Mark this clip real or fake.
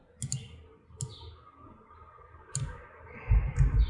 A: real